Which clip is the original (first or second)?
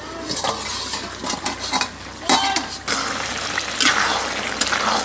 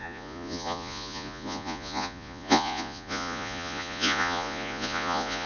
first